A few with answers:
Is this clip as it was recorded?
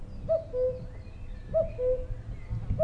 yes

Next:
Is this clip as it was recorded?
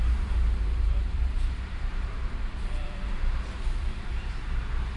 no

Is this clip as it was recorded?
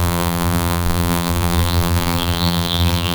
no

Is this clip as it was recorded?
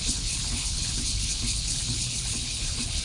no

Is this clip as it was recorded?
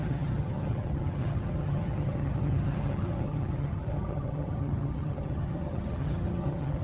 no